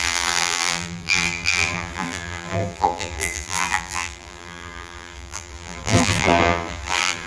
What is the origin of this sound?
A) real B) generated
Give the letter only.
B